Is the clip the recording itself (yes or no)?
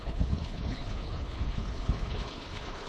no